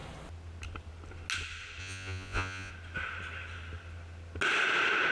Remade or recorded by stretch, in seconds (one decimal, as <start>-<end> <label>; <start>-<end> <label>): 0.0-1.8 recorded; 1.8-2.7 remade; 2.7-5.1 recorded